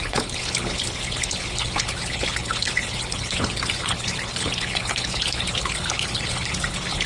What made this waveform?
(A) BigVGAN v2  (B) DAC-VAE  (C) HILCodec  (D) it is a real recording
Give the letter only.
C